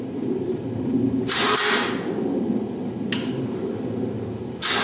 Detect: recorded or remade recorded